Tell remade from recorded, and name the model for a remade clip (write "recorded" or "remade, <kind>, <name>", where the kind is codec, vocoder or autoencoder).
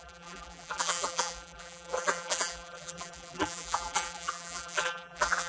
remade, vocoder, BigVGAN v2